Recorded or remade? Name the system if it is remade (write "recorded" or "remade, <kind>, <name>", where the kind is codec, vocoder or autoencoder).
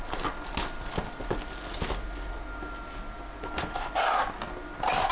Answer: recorded